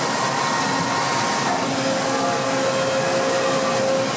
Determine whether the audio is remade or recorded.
recorded